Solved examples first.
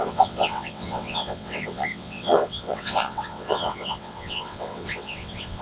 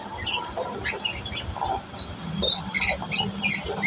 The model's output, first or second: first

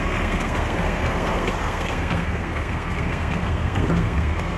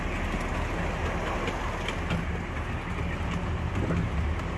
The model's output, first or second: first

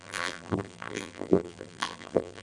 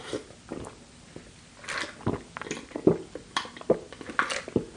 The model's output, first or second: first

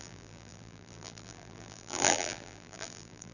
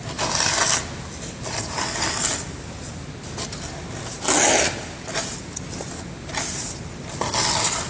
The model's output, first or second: first